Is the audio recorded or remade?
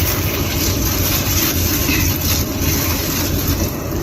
recorded